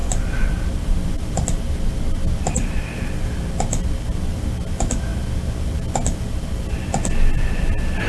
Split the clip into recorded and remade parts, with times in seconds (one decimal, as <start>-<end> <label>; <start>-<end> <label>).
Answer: 0.0-8.1 recorded